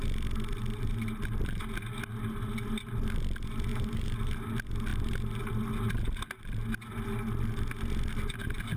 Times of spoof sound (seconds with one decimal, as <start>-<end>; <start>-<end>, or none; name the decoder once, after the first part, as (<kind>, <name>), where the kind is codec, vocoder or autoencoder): 3.7-4.3 (vocoder, BigVGAN v2)